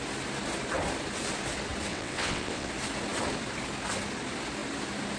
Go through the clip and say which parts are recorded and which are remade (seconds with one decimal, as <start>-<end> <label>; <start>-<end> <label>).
0.0-1.9 recorded; 1.9-2.7 remade; 2.7-5.2 recorded